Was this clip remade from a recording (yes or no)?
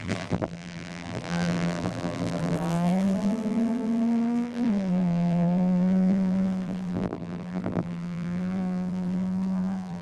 yes